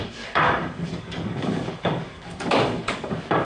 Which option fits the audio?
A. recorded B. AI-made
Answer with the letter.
B